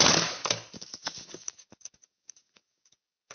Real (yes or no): no